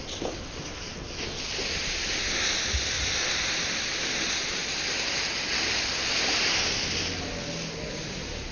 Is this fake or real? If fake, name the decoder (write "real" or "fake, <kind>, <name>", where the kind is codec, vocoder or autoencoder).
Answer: real